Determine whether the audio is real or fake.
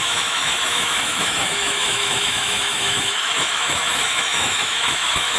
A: fake